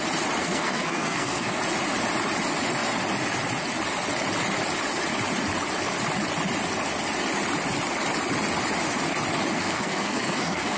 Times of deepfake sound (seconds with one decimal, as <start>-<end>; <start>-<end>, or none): 0.4-1.6; 9.5-10.8